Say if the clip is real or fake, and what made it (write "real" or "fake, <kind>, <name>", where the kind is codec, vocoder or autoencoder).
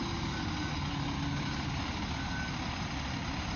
real